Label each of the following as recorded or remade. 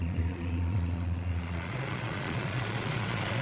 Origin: remade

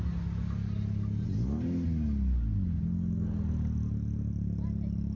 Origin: recorded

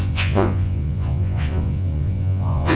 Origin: remade